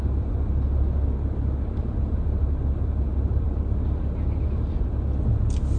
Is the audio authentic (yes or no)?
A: yes